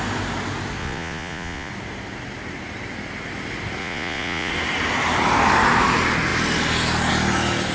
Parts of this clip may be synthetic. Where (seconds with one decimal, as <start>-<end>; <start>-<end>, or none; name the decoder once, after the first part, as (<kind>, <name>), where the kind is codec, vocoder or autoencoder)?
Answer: 0.8-1.7 (vocoder, Vocos); 3.8-4.5